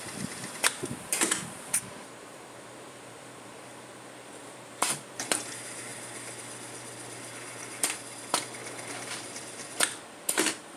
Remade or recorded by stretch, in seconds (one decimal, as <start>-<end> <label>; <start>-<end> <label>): 0.0-3.7 remade; 3.7-4.4 recorded; 4.4-5.9 remade; 5.9-9.2 recorded; 9.2-10.8 remade